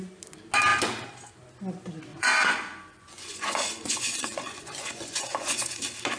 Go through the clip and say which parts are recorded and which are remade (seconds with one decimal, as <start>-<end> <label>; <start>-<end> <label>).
0.0-2.1 recorded; 2.1-5.8 remade; 5.8-6.2 recorded